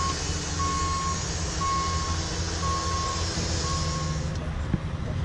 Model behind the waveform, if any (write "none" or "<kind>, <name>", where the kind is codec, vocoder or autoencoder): none